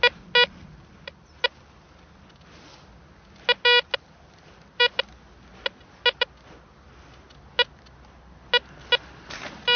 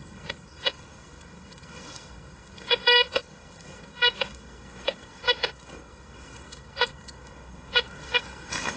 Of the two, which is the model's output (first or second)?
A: second